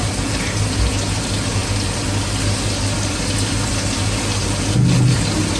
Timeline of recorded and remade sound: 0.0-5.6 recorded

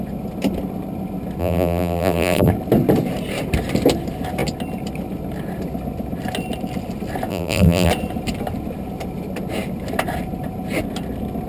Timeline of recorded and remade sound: 0.0-1.4 recorded; 1.4-2.5 remade; 2.5-7.3 recorded; 7.3-7.9 remade; 7.9-11.5 recorded

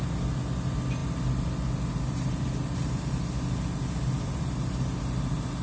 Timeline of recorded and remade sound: 0.0-5.6 recorded

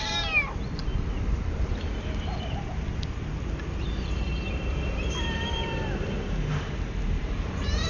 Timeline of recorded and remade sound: 0.0-0.9 remade; 0.9-3.8 recorded; 3.8-7.9 remade